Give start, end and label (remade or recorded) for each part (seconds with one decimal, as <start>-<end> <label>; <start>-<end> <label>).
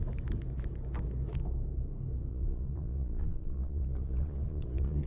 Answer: 0.0-2.3 recorded; 2.3-5.1 remade